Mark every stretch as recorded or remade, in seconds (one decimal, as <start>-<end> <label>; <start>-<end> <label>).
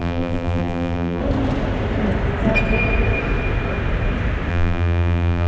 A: 0.0-1.2 remade; 1.2-4.5 recorded; 4.5-5.5 remade